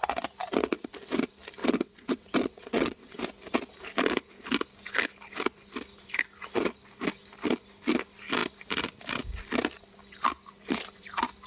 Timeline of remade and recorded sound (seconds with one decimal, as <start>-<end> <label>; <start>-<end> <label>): 0.0-1.6 recorded; 1.6-3.2 remade; 3.2-11.5 recorded